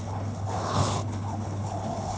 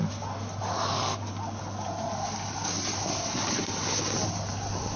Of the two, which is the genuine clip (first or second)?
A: second